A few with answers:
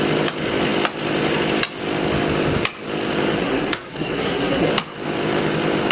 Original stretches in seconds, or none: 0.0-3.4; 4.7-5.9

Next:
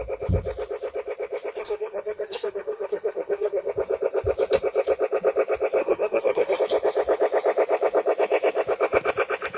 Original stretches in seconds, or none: 0.0-1.6; 3.7-5.8; 6.6-9.6

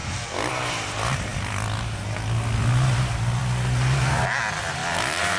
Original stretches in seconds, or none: 0.0-5.4

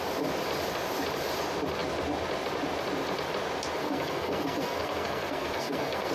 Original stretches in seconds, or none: 0.0-3.8

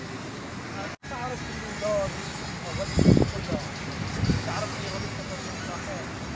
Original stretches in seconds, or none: 0.0-6.4